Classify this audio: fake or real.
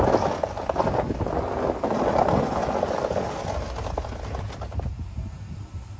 real